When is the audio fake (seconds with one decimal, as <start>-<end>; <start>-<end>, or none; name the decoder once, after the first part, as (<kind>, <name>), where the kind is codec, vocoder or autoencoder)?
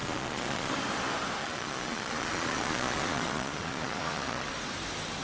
0.0-0.7 (vocoder, Vocos); 1.4-4.5